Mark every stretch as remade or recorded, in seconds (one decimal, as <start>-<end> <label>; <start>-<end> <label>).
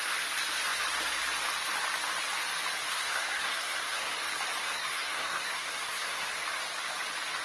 0.0-2.9 recorded; 2.9-4.1 remade; 4.1-4.6 recorded; 4.6-6.3 remade; 6.3-7.4 recorded